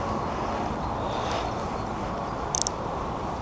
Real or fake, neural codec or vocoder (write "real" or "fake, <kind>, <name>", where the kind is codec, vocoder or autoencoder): real